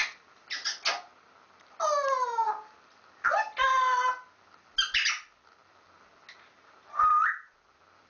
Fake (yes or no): no